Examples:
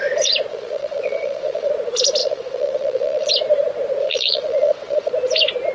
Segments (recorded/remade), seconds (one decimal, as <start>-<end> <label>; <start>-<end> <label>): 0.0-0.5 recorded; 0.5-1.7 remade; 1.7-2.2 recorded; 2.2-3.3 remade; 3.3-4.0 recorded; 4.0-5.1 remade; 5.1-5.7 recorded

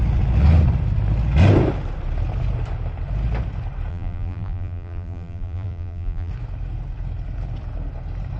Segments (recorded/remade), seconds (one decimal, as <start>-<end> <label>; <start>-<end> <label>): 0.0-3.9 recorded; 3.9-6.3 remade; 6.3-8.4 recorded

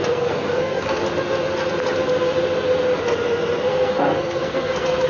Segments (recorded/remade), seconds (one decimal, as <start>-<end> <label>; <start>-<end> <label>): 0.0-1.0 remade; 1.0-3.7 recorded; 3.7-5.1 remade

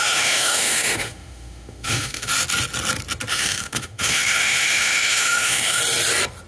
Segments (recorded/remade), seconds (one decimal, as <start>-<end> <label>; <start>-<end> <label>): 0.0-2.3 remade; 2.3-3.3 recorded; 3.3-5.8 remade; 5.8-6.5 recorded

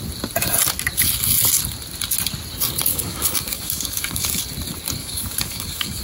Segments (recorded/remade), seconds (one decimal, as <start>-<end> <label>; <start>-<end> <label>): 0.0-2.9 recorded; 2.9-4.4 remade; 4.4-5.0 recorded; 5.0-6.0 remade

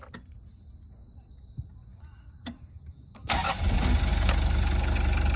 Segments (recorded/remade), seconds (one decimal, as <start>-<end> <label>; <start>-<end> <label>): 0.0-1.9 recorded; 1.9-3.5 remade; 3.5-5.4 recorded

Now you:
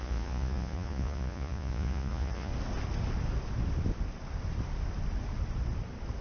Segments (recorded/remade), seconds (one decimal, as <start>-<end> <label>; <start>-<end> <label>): 0.0-2.5 remade; 2.5-6.2 recorded